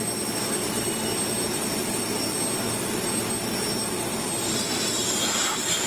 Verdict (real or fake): real